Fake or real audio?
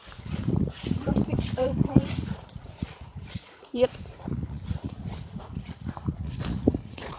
fake